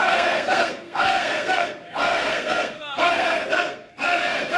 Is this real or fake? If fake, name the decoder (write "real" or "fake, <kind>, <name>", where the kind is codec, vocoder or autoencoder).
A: fake, codec, SNAC